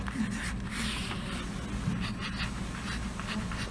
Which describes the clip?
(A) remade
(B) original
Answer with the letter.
B